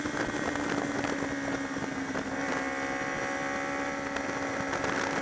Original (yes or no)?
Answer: yes